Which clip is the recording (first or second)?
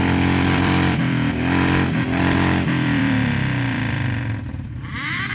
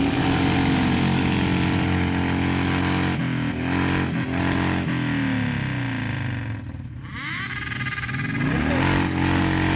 second